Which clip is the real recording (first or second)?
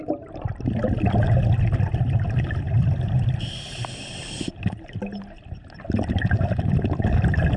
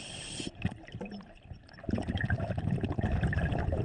first